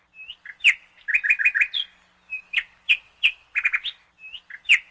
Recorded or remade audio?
recorded